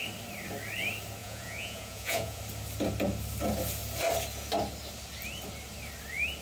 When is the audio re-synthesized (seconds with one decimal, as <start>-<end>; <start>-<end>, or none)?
1.2-2.4